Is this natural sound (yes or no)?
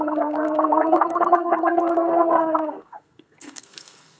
no